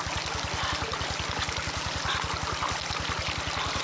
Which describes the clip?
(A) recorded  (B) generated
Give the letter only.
A